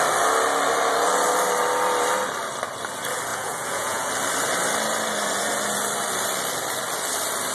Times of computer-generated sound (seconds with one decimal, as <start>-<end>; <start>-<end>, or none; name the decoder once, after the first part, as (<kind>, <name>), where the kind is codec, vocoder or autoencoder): 3.3-4.1 (vocoder, Vocos)